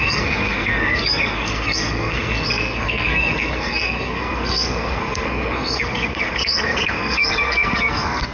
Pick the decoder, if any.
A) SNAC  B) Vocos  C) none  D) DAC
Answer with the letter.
A